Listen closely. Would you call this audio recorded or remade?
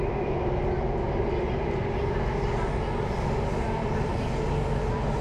recorded